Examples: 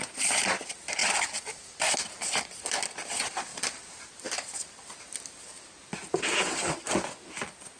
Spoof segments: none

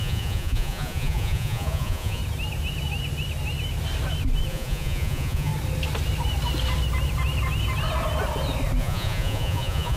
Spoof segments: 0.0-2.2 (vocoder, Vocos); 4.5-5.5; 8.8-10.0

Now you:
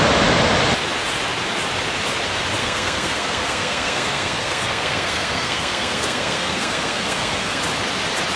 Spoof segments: 2.6-7.6 (codec, SNAC)

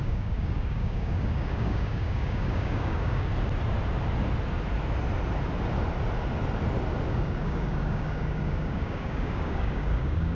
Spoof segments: 0.0-3.3 (codec, DAC); 7.1-10.3

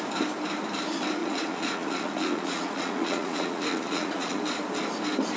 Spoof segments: 1.2-4.4 (vocoder, Vocos)